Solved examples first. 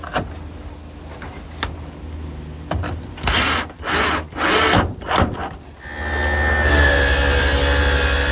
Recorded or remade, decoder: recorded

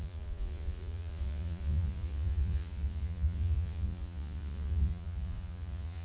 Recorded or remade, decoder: remade, vocoder, Vocos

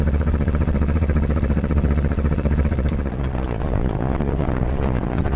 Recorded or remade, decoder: remade, vocoder, Vocos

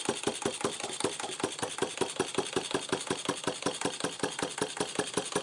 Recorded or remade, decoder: recorded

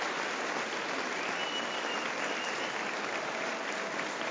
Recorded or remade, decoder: recorded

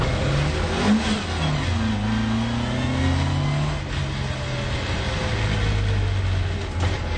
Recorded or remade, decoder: recorded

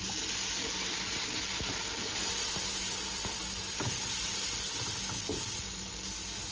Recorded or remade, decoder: recorded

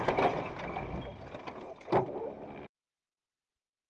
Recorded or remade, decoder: recorded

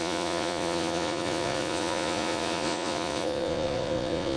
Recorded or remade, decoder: remade, vocoder, Vocos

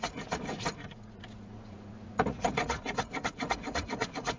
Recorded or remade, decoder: remade, vocoder, Vocos